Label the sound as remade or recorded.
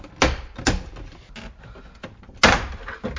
recorded